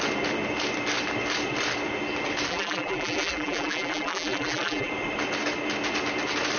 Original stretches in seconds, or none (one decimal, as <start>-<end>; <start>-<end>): 0.0-2.5; 4.9-6.6